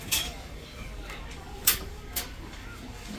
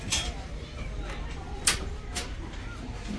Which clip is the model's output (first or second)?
first